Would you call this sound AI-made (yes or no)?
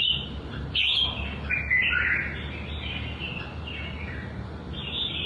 no